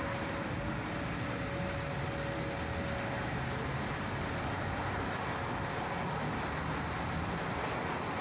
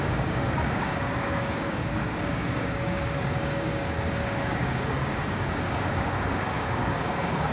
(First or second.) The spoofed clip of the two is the second